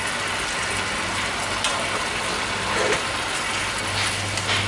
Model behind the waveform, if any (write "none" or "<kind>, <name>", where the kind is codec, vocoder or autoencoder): none